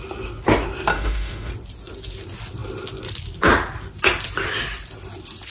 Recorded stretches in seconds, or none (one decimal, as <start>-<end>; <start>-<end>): 0.0-0.9; 1.5-5.5